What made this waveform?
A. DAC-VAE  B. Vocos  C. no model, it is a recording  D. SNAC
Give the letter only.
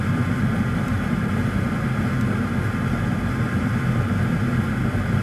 C